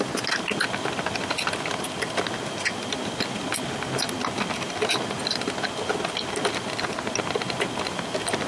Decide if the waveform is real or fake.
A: real